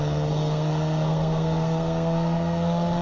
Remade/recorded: remade